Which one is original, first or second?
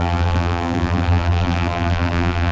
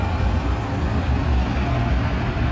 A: second